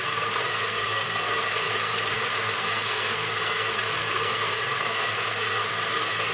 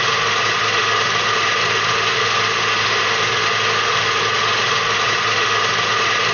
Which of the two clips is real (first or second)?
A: second